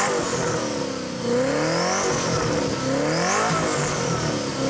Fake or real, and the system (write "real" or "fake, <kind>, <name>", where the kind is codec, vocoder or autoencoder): real